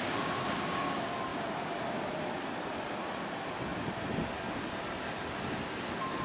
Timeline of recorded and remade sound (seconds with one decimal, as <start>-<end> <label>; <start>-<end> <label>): 0.0-1.3 recorded; 1.3-1.8 remade; 1.8-6.2 recorded